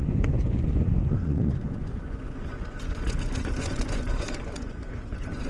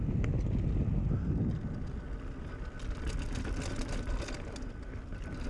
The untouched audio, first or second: second